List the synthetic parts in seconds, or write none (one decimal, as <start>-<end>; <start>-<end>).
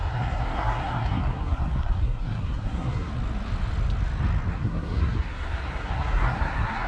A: 0.0-3.1; 4.5-6.9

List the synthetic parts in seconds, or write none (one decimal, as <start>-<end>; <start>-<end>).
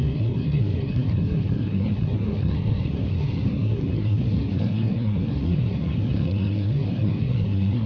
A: 0.0-7.9